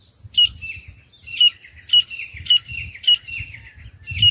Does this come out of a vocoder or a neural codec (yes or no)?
no